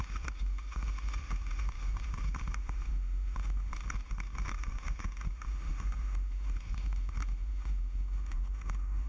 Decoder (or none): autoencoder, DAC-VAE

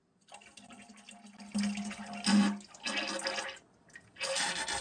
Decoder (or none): none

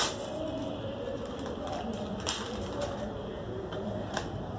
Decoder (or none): none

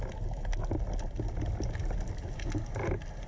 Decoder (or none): none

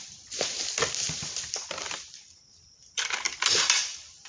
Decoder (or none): vocoder, BigVGAN v2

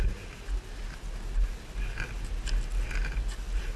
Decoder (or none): none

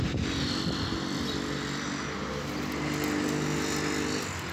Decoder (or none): none